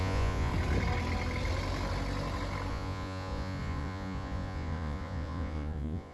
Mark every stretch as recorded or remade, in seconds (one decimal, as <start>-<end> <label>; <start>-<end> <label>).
0.0-0.5 remade; 0.5-2.7 recorded; 2.7-6.1 remade